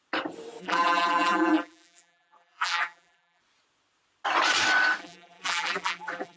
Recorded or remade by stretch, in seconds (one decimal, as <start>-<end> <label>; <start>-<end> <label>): 0.0-0.6 recorded; 0.6-3.4 remade; 3.4-5.0 recorded; 5.0-6.4 remade